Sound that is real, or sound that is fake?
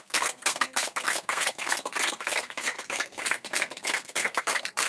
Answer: fake